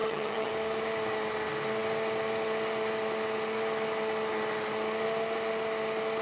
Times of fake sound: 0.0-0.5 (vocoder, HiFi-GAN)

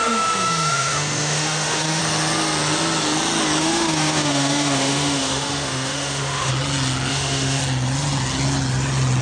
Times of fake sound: 0.0-2.0 (autoencoder, DAC-VAE); 3.6-6.5; 7.1-7.6

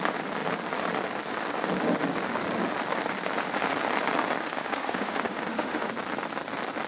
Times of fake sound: 4.4-5.9 (autoencoder, DAC-VAE)

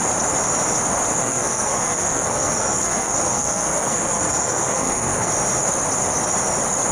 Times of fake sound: 1.2-5.3 (codec, SNAC)